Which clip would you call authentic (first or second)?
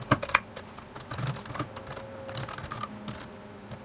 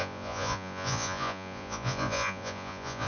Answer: first